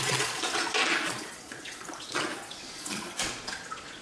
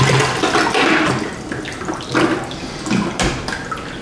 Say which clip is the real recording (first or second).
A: second